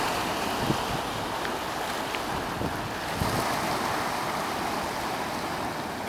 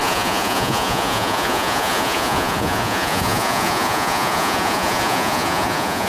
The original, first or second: first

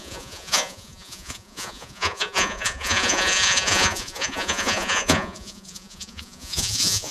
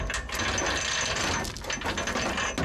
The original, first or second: second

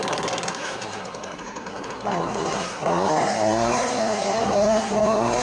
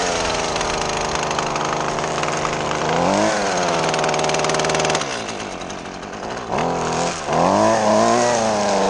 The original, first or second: second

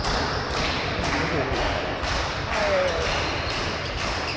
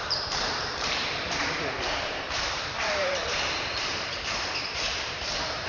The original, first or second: first